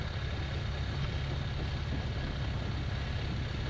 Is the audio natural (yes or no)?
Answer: yes